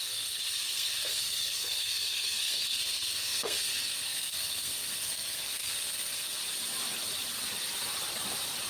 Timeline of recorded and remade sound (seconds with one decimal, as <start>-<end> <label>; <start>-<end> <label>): 0.0-6.4 remade; 6.4-8.7 recorded